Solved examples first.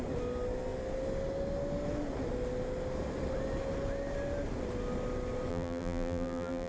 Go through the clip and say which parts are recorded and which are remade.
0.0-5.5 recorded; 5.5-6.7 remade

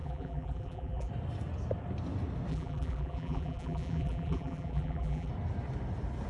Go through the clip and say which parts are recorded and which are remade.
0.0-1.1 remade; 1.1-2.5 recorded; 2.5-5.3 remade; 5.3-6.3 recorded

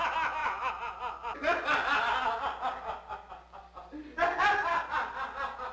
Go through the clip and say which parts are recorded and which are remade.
0.0-5.7 recorded